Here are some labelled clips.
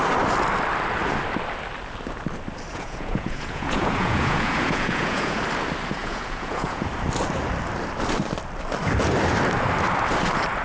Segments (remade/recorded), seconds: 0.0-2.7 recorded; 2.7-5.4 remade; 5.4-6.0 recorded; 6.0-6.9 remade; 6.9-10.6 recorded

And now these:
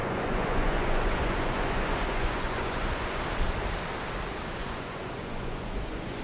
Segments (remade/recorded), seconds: 0.0-3.2 remade; 3.2-4.6 recorded; 4.6-6.2 remade

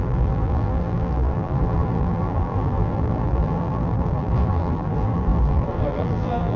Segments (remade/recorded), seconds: 0.0-6.6 remade

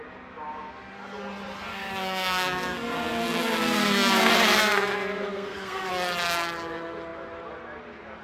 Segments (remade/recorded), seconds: 0.0-1.7 recorded; 1.7-5.9 remade; 5.9-8.2 recorded

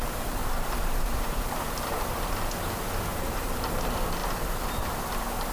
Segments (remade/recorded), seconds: 0.0-0.4 recorded; 0.4-2.2 remade; 2.2-3.1 recorded; 3.1-3.7 remade; 3.7-5.5 recorded

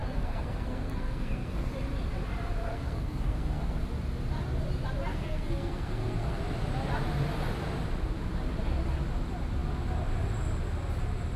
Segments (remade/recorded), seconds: 0.0-1.7 remade; 1.7-2.7 recorded; 2.7-3.8 remade; 3.8-5.1 recorded; 5.1-6.4 remade; 6.4-11.4 recorded

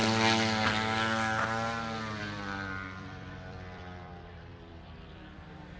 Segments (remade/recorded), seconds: 0.0-2.2 recorded; 2.2-5.8 remade